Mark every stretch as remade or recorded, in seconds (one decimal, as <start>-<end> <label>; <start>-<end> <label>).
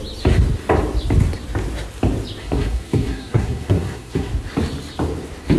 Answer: 0.0-2.4 recorded; 2.4-4.3 remade; 4.3-5.6 recorded